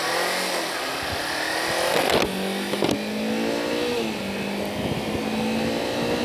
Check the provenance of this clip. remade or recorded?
recorded